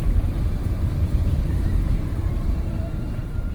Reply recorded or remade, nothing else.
remade